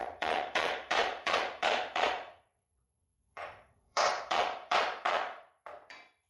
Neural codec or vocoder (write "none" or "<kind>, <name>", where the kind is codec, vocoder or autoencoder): vocoder, Vocos